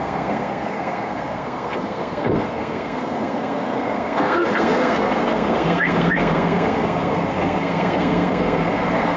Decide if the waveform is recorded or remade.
remade